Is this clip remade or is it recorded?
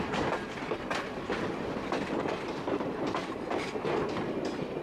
recorded